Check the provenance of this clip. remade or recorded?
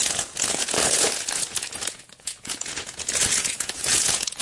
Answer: remade